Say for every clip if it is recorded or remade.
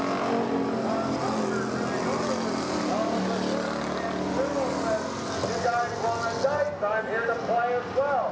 recorded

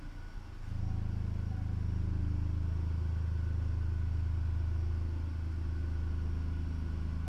recorded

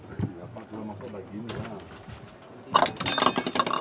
recorded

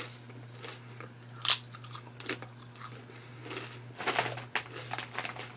recorded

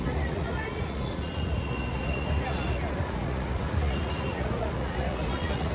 remade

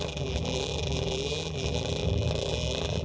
remade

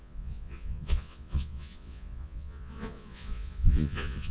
remade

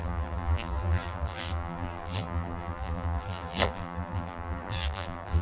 remade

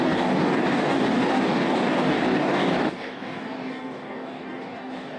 remade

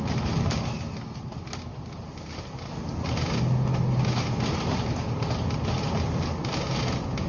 recorded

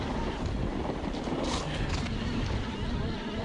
recorded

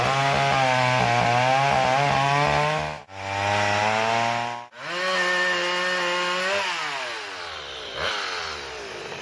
recorded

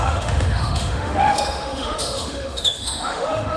remade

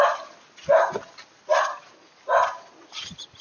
recorded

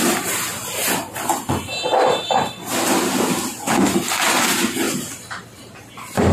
recorded